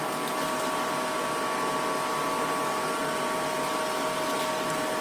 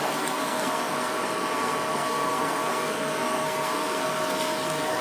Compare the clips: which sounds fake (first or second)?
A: second